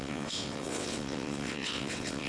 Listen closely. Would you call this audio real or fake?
fake